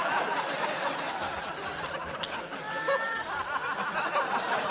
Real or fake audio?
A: real